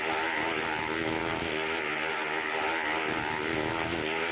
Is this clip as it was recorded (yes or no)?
yes